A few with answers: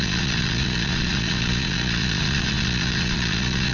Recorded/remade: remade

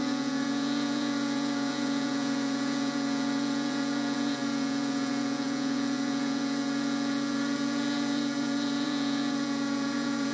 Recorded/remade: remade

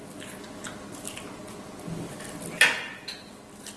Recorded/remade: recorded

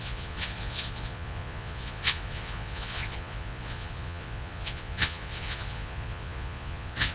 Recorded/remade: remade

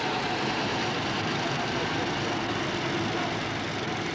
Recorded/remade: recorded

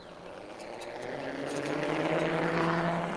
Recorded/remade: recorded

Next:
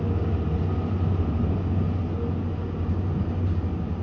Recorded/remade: recorded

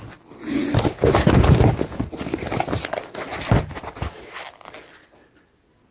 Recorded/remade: recorded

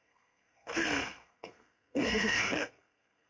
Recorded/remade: remade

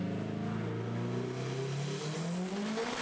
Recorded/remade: recorded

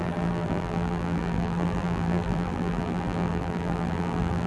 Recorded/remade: remade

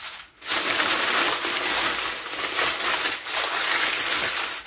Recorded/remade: recorded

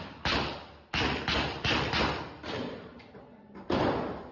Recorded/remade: recorded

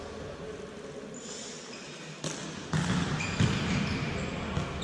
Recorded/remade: recorded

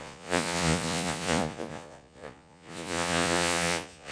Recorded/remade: remade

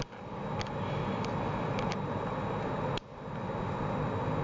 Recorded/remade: recorded